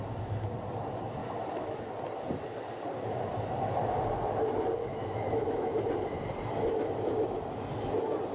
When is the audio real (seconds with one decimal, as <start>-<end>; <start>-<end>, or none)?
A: 0.0-1.2; 1.8-4.9; 5.8-8.3